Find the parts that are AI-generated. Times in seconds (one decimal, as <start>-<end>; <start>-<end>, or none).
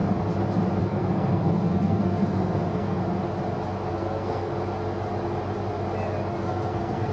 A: 0.8-3.0; 3.9-4.5; 6.3-7.1